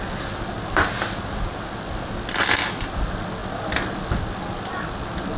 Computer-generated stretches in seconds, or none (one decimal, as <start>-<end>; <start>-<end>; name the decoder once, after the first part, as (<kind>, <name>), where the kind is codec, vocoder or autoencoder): none